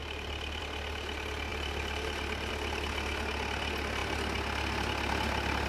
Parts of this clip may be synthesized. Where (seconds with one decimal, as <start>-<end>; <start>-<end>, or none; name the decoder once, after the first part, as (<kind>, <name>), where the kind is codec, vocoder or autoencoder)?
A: 0.0-0.6 (vocoder, BigVGAN v2); 1.5-2.5